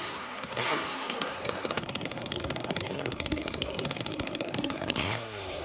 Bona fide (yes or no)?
no